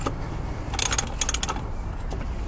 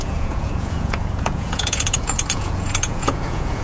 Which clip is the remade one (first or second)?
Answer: second